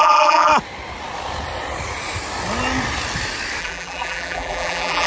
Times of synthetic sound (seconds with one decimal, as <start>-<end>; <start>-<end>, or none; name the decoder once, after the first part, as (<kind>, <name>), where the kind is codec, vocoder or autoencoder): 0.0-0.5 (vocoder, BigVGAN v2); 3.6-5.1